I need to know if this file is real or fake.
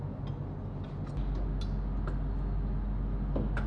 real